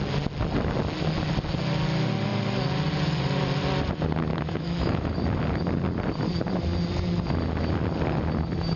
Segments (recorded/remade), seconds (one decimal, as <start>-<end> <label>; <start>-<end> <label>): 0.0-4.3 recorded; 4.3-5.2 remade; 5.2-8.8 recorded